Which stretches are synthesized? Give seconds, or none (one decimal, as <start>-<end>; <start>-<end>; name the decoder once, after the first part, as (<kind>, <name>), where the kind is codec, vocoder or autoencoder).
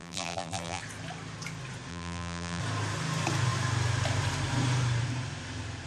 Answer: 0.0-0.8 (vocoder, BigVGAN v2); 1.9-2.6